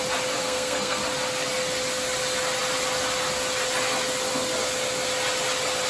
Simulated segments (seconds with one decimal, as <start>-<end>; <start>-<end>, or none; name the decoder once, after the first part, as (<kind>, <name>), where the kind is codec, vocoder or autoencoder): 0.4-1.0 (codec, SNAC)